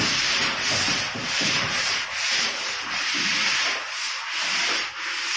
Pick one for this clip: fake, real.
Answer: fake